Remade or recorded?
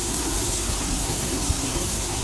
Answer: remade